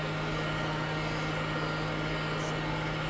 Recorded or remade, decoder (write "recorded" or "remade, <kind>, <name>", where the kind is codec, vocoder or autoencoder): recorded